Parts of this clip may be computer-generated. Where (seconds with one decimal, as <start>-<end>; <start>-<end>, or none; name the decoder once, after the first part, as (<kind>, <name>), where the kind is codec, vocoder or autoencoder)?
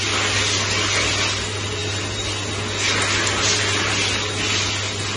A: none